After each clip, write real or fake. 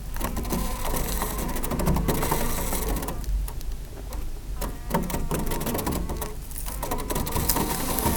real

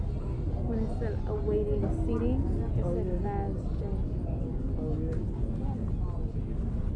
real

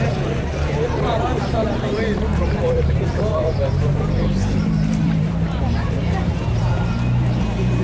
fake